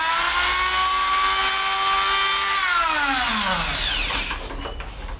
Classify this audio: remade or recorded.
recorded